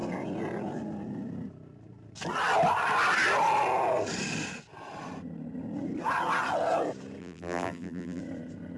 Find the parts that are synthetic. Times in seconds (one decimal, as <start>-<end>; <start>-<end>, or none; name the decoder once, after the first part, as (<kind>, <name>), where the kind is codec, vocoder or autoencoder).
7.2-8.2 (vocoder, BigVGAN v2)